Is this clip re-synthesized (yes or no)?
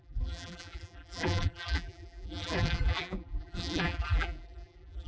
yes